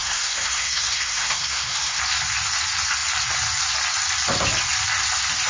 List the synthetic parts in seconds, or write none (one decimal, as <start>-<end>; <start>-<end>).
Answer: 0.0-2.0